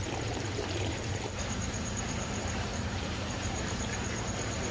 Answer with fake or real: fake